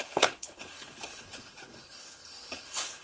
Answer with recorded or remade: remade